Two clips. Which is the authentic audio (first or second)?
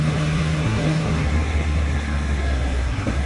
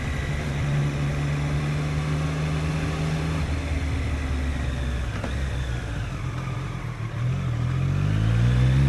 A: second